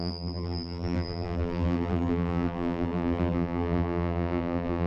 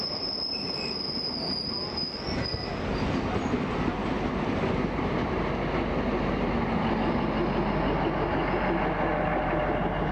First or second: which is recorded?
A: second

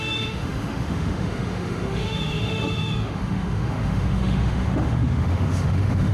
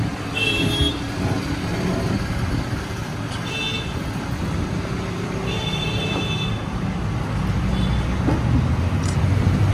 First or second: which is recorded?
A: second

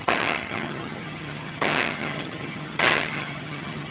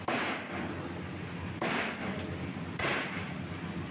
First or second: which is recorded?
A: second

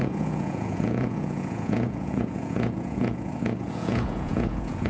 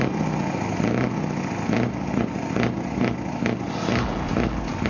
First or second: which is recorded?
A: second